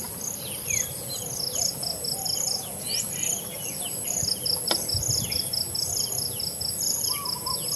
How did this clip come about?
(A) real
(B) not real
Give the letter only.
A